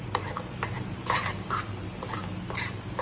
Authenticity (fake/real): fake